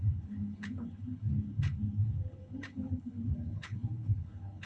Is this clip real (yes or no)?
no